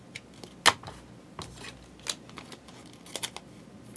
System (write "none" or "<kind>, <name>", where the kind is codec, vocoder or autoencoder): none